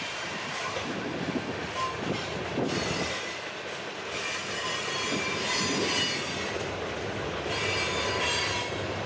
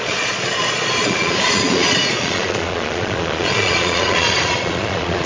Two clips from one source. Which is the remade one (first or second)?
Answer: second